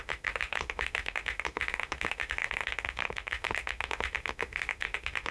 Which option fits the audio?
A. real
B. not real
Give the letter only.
B